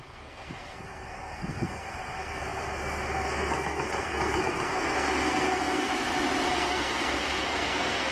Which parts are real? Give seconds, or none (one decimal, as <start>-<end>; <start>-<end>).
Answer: 5.9-6.5